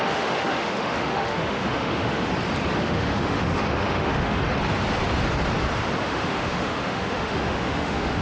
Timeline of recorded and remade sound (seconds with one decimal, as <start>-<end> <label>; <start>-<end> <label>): 0.0-2.3 remade; 2.3-2.8 recorded; 2.8-4.4 remade; 4.4-6.0 recorded; 6.0-8.2 remade